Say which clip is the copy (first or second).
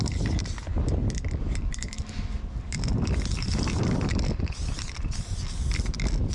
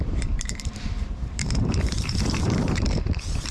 second